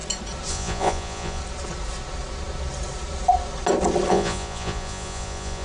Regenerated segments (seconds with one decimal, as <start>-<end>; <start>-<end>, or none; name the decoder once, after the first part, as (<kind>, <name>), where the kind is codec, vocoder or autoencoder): 0.5-1.4 (vocoder, Vocos); 4.1-5.6